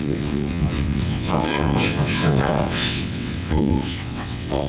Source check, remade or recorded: remade